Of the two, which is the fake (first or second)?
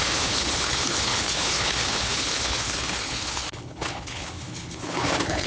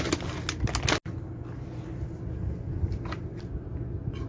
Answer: first